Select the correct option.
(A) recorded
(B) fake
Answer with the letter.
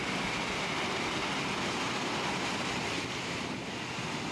A